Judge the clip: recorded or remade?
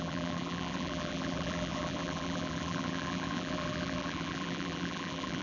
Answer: remade